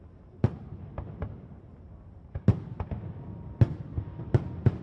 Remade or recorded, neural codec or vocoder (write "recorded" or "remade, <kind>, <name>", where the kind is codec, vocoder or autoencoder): recorded